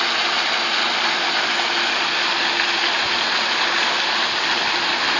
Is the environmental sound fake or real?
real